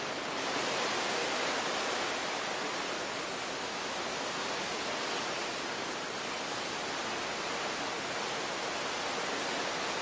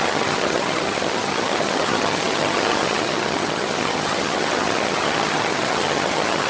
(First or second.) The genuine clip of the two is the first